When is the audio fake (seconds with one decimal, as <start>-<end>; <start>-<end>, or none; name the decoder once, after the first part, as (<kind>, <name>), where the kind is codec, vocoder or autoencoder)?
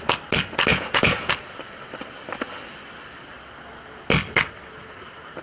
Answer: 0.7-1.3 (vocoder, Vocos)